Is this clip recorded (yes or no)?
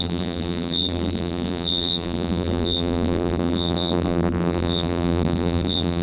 no